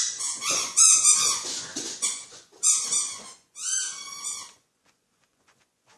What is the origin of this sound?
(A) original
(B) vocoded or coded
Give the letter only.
B